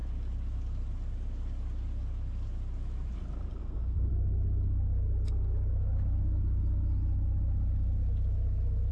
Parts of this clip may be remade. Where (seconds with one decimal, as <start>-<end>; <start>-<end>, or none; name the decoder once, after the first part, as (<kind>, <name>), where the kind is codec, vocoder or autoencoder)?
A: 3.6-4.1 (codec, SNAC)